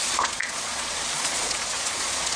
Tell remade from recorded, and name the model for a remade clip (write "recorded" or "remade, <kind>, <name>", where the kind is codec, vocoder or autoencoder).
remade, vocoder, Vocos